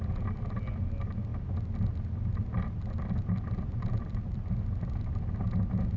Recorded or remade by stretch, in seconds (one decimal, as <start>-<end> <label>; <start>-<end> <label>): 0.0-6.0 recorded